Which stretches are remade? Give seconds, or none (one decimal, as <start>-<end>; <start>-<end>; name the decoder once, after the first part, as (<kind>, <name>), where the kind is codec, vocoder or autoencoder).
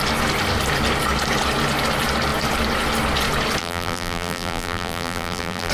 3.6-5.7 (vocoder, BigVGAN v2)